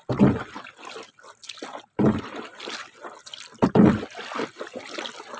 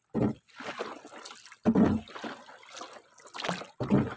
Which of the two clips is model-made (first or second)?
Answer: first